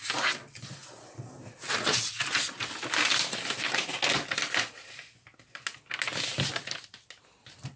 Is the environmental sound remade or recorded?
recorded